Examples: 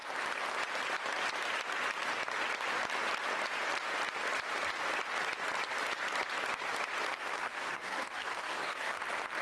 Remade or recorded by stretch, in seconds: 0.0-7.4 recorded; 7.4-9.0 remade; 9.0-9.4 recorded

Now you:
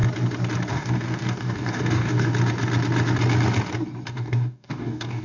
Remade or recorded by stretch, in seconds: 0.0-0.7 recorded; 0.7-2.3 remade; 2.3-4.1 recorded; 4.1-5.2 remade

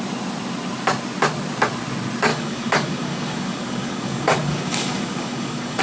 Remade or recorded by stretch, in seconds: 0.0-2.3 recorded; 2.3-5.8 remade

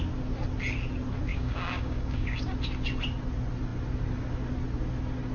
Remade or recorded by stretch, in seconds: 0.0-1.3 recorded; 1.3-2.4 remade; 2.4-5.3 recorded